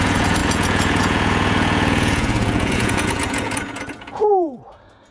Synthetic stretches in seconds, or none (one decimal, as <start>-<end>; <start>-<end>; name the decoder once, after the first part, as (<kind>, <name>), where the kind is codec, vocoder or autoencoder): 0.0-5.1 (vocoder, Vocos)